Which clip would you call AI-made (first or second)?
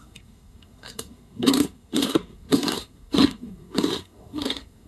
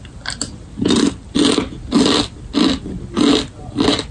first